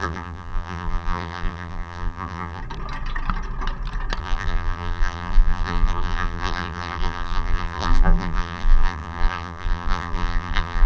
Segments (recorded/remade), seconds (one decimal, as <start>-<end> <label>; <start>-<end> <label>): 0.0-2.6 remade; 2.6-4.2 recorded; 4.2-10.9 remade